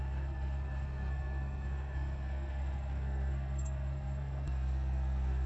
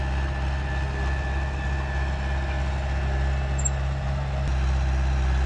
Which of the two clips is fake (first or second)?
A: first